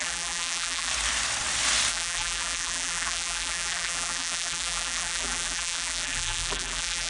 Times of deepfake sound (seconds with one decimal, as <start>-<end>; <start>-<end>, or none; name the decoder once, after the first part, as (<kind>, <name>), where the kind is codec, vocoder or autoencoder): 0.0-0.9 (vocoder, BigVGAN v2); 1.9-7.1

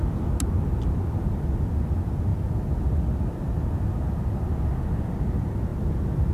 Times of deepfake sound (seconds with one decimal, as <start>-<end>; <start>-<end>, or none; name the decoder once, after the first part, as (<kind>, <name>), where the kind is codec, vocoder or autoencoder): none